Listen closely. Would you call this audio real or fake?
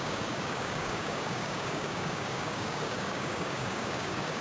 fake